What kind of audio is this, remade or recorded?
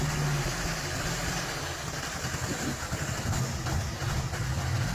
recorded